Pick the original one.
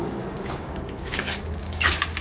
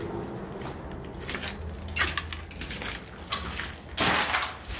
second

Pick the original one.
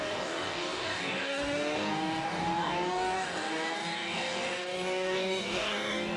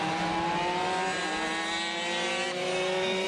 second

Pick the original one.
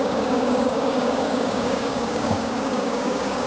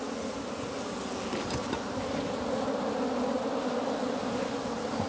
second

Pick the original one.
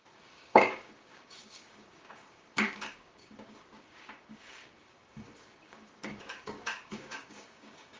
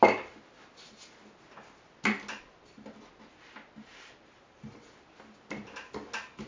second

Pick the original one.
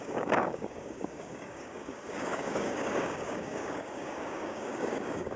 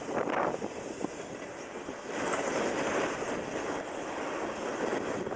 second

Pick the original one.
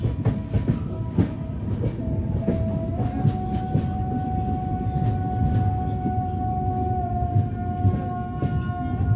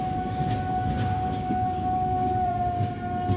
first